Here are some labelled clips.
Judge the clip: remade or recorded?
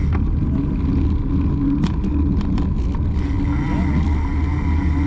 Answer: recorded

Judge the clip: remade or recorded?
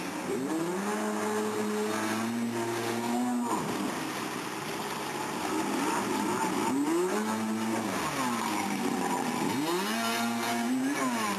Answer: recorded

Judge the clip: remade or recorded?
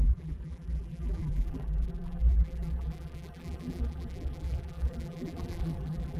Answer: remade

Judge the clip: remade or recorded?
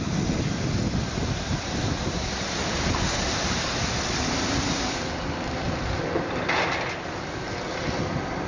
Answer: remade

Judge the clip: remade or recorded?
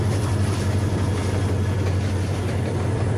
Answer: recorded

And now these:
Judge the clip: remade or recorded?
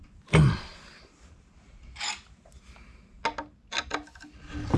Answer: recorded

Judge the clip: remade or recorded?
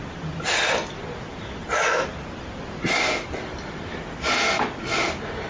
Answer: recorded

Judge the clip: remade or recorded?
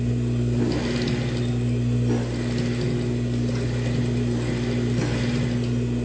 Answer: recorded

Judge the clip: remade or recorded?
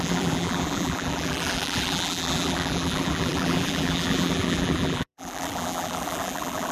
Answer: remade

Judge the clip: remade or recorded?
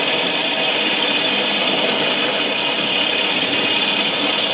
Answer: remade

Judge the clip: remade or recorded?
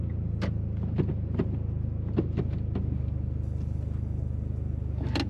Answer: recorded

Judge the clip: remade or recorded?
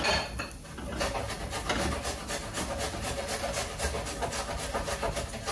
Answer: recorded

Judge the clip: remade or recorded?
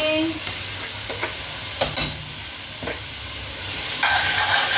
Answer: recorded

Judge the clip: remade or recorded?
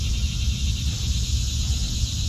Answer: recorded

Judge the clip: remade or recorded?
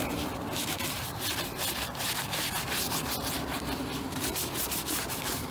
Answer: remade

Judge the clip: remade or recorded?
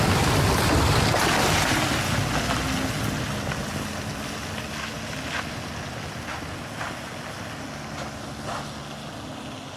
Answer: recorded